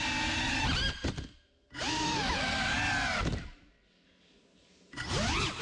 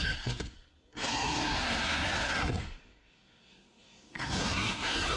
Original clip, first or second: first